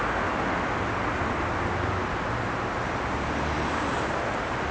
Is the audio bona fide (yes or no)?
yes